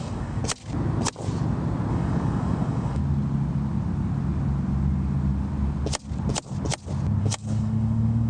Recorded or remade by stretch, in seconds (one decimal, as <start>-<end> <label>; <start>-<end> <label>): 0.0-0.4 remade; 0.4-1.9 recorded; 1.9-3.0 remade; 3.0-7.2 recorded; 7.2-8.3 remade